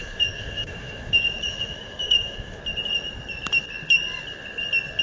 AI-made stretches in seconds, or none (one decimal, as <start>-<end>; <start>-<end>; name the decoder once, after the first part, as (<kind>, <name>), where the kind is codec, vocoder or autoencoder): 0.0-2.6 (autoencoder, DAC-VAE)